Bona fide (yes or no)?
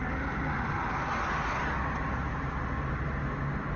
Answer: yes